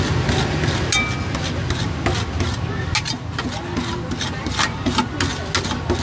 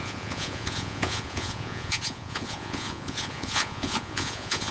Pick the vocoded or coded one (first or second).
second